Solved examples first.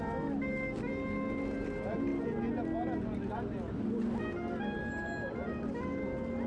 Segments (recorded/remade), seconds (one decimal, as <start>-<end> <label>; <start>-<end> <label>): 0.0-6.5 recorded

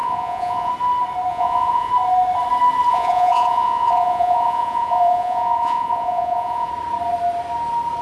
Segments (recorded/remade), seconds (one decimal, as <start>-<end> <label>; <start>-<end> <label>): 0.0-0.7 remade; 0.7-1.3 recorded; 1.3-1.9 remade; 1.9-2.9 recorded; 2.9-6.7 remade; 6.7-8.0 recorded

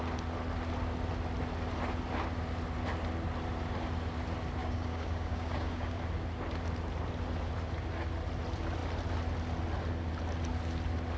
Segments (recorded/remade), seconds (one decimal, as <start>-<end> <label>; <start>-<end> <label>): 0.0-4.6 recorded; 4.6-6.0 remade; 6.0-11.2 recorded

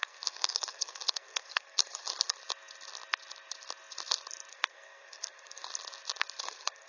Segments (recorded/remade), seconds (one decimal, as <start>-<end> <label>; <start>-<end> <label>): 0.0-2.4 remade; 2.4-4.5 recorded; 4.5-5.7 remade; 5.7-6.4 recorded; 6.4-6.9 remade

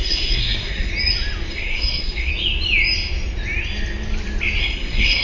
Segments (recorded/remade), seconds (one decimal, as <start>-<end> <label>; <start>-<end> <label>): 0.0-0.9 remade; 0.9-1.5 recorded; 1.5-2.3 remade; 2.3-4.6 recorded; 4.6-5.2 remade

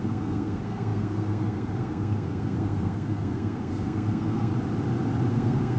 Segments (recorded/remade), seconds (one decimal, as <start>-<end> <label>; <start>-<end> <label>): 0.0-4.5 remade; 4.5-5.3 recorded; 5.3-5.8 remade